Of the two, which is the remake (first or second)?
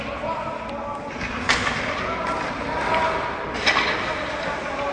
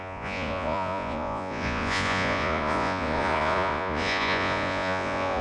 second